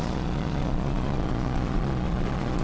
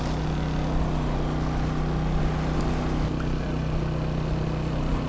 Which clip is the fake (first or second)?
first